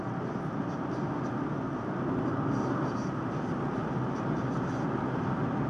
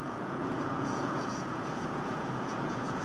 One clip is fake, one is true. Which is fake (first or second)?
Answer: second